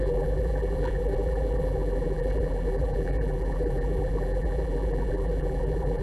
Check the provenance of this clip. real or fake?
fake